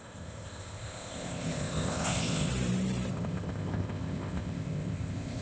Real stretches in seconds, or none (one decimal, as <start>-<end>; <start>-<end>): 2.5-3.1